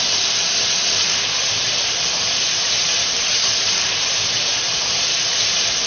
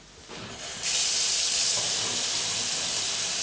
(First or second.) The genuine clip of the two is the second